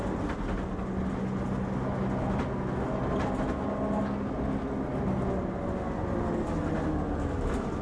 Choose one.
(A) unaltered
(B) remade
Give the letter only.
A